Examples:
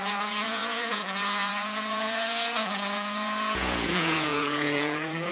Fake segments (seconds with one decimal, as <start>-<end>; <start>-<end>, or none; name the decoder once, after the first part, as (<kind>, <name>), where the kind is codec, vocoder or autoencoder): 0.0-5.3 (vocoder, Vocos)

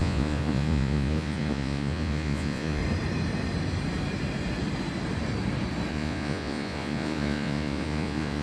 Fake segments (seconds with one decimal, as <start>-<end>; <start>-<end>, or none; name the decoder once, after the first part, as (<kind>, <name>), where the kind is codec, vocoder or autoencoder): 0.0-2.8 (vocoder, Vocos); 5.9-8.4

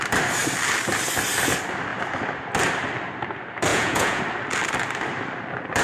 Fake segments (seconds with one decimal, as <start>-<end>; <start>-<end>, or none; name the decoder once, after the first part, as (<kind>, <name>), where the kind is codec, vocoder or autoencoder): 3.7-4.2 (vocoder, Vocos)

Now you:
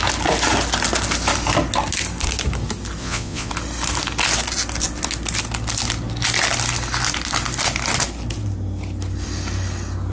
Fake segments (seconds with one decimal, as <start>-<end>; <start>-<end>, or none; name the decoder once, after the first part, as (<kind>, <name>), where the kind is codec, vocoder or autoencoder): 3.0-3.5 (vocoder, Vocos)